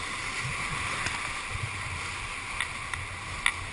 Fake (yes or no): no